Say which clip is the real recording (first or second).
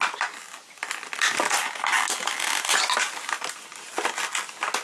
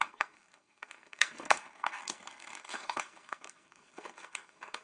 first